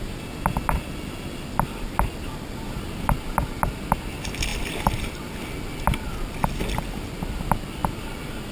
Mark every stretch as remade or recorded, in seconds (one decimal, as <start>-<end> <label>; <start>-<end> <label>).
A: 0.0-8.5 recorded